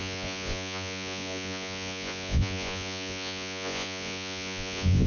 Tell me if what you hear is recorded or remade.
remade